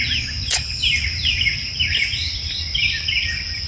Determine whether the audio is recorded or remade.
recorded